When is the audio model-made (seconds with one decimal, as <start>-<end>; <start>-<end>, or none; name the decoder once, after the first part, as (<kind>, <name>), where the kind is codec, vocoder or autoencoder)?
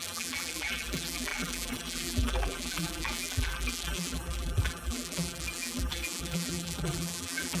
0.0-7.6 (vocoder, BigVGAN v2)